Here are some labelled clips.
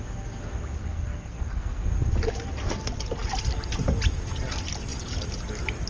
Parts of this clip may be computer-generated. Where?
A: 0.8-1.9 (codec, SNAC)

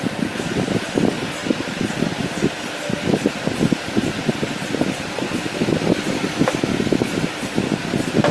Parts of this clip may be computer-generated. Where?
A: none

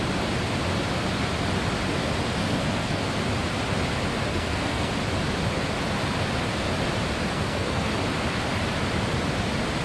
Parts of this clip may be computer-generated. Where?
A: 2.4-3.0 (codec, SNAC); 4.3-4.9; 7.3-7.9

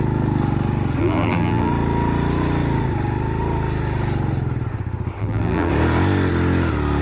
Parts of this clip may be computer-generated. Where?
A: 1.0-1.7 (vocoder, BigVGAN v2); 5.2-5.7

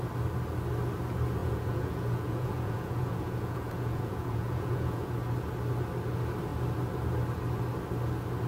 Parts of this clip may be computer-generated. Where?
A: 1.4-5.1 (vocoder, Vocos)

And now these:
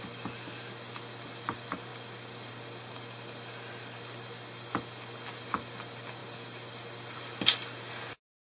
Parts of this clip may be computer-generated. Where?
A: none